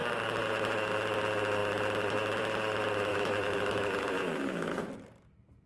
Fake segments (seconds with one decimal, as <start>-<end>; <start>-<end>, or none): 3.1-4.9